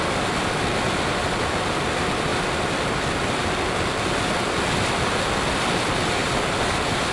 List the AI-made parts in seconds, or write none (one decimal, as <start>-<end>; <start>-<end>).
none